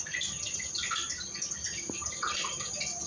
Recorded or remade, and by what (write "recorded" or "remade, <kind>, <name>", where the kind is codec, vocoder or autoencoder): recorded